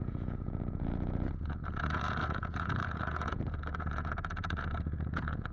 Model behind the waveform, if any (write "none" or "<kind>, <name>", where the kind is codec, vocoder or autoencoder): vocoder, Vocos